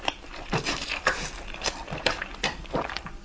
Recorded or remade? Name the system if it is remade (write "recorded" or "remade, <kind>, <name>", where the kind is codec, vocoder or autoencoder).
remade, vocoder, BigVGAN v2